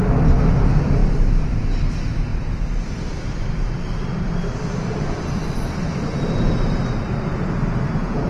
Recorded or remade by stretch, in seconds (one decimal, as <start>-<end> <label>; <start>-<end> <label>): 0.0-1.0 recorded; 1.0-1.6 remade; 1.6-2.3 recorded; 2.3-5.1 remade; 5.1-8.3 recorded